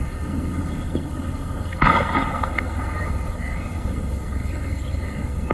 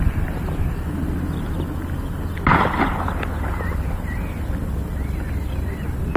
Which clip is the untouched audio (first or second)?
second